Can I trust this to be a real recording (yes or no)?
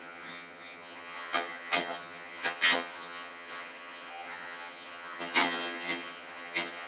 no